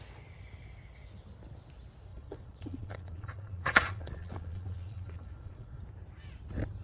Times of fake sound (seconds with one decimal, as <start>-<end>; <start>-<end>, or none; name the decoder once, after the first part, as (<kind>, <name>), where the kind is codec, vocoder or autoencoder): 2.1-5.8 (vocoder, Vocos)

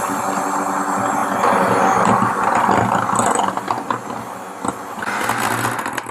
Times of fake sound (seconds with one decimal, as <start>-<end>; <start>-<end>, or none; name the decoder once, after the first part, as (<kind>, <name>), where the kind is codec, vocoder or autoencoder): none

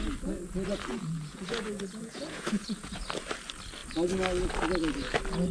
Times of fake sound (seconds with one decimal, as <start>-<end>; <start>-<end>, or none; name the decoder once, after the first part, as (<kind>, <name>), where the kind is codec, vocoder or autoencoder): 0.9-3.0 (vocoder, Vocos)